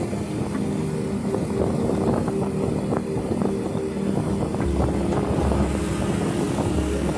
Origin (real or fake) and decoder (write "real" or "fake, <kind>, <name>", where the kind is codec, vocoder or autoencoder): real